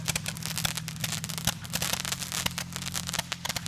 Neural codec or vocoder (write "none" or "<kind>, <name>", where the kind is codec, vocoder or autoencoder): none